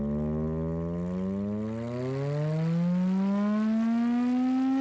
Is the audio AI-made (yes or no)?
no